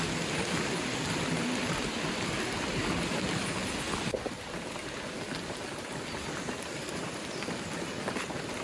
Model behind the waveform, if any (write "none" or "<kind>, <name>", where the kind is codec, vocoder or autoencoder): none